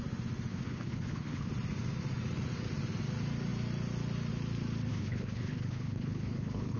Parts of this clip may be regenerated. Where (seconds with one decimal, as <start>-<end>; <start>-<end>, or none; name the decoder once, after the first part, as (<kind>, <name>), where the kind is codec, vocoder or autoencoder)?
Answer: 0.5-1.5 (codec, HILCodec); 4.9-6.8